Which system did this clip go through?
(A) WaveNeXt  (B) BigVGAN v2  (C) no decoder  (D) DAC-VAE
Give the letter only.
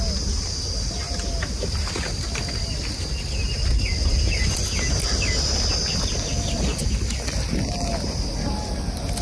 C